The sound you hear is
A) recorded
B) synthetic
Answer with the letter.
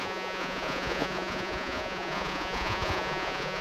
B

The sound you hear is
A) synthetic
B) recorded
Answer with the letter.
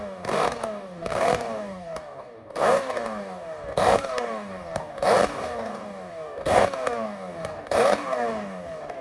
A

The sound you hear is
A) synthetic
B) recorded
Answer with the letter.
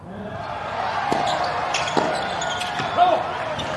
B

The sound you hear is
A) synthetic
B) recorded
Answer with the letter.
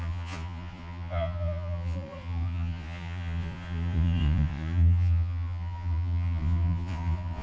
A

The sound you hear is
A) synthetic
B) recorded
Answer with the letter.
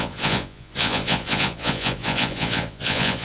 A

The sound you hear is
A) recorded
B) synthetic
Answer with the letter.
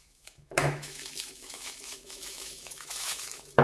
B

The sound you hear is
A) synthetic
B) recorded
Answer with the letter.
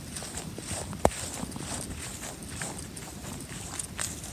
B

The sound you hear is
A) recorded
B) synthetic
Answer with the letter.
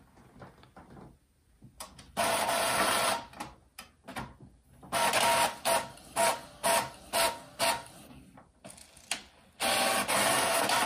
A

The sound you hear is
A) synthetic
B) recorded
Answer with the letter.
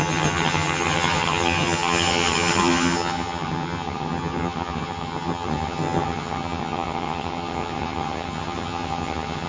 A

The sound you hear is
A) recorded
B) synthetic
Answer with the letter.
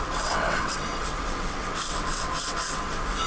B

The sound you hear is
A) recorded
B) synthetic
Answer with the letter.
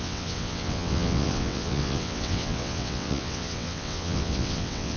B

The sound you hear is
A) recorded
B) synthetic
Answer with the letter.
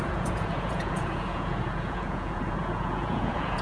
B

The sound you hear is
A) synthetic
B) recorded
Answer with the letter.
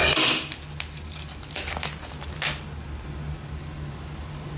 B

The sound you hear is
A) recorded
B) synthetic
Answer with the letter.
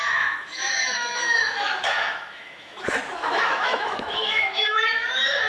B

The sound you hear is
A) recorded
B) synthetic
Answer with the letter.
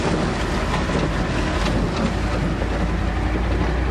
A